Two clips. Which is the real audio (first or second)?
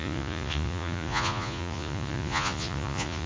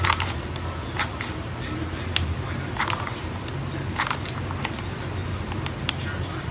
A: second